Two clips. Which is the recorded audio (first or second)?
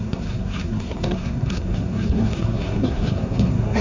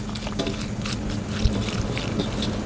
second